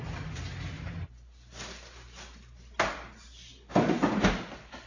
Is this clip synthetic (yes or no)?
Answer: no